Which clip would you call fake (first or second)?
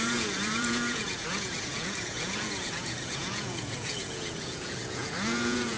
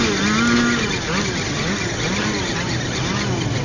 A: first